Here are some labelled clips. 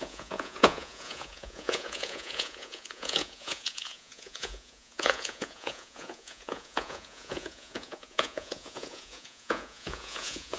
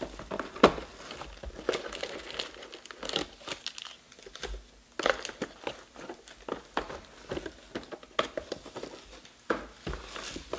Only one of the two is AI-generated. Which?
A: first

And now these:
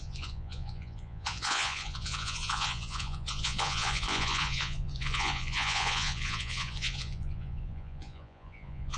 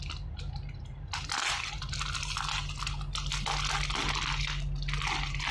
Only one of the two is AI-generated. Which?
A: first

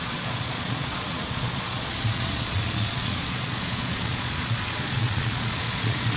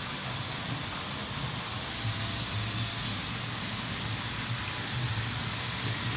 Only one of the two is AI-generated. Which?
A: first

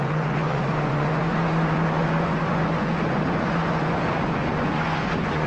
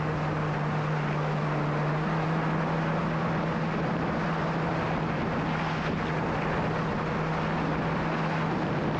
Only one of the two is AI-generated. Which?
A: first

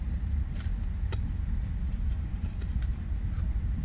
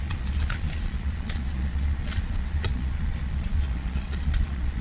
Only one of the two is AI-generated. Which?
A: second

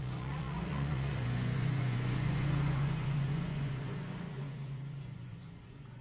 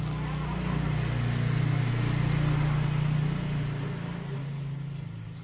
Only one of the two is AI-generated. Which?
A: first